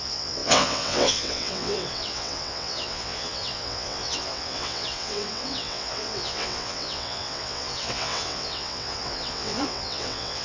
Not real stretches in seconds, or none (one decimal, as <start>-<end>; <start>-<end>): 0.0-10.4